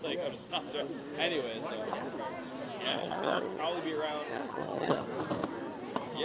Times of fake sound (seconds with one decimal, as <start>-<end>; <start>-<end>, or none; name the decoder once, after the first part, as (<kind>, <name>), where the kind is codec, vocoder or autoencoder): 2.9-3.6 (vocoder, HiFi-GAN); 4.3-5.0